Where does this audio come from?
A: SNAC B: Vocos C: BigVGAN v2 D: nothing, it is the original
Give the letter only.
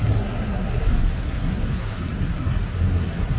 A